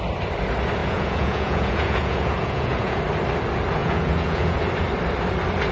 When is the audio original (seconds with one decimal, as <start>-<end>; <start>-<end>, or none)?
0.0-0.8; 3.0-3.8; 4.6-5.7